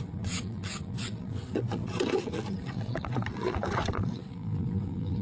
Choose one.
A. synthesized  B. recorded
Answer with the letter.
A